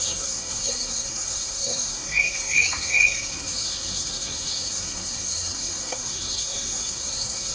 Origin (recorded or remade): remade